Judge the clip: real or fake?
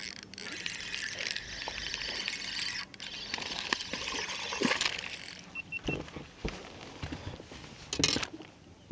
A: real